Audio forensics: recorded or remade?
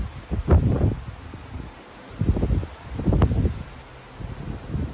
recorded